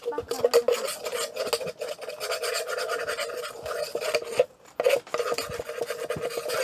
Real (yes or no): yes